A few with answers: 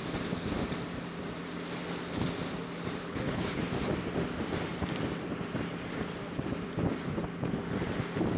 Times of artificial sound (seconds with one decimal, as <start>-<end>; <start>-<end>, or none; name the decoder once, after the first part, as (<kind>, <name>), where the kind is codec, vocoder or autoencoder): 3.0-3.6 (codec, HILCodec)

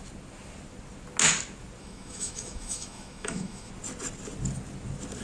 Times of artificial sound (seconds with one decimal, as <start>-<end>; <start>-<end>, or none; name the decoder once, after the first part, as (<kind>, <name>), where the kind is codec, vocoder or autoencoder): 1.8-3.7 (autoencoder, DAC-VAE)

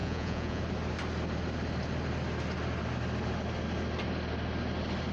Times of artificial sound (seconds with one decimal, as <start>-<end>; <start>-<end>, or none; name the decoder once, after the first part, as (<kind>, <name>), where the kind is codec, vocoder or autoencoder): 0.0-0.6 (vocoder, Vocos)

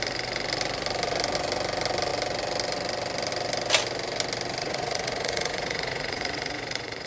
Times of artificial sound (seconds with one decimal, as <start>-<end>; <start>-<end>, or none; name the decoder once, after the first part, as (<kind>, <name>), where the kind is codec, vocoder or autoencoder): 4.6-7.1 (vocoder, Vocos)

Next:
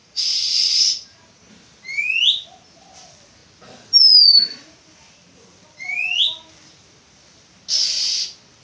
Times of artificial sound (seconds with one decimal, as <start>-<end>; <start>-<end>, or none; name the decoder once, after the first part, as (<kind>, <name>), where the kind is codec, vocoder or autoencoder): 0.0-1.2 (vocoder, Vocos)

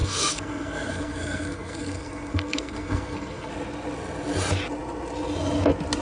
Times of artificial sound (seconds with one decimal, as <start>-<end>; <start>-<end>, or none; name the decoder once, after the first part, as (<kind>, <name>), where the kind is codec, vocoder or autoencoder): 0.0-3.5 (codec, SNAC)

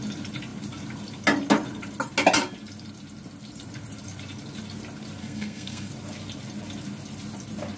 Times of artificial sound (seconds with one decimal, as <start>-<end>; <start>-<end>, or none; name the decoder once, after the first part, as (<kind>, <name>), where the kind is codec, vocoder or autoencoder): 5.2-5.9 (codec, SNAC)

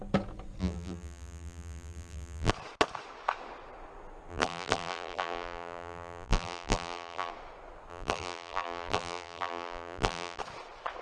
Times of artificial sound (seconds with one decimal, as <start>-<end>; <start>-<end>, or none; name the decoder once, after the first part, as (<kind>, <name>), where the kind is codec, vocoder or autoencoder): 0.6-2.5 (vocoder, BigVGAN v2); 4.3-7.3; 7.9-10.4